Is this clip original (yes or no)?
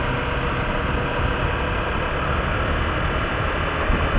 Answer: yes